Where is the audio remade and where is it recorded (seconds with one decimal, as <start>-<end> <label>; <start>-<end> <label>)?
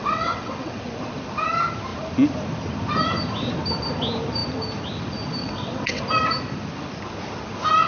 0.0-0.8 remade; 0.8-5.4 recorded; 5.4-6.0 remade; 6.0-7.9 recorded